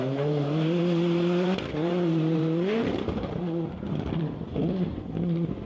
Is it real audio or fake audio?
fake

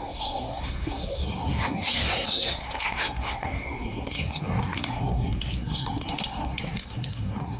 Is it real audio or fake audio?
fake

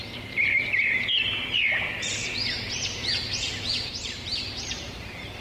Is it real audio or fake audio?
fake